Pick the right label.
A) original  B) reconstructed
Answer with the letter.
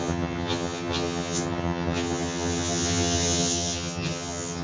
B